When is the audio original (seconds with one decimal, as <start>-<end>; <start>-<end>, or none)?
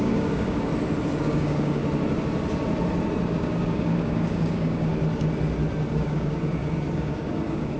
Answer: 0.7-1.2; 1.8-3.3; 4.9-5.9